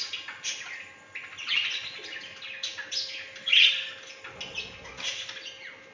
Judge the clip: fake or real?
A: real